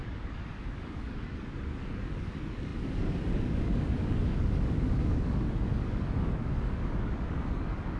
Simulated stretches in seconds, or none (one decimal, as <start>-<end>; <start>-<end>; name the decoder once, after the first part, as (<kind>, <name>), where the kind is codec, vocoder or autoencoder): 0.0-8.0 (codec, DAC)